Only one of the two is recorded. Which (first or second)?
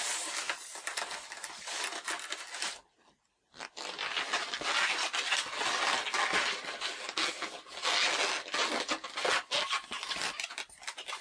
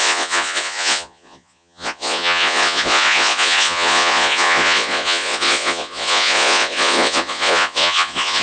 first